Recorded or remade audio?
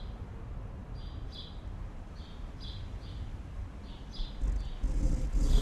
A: recorded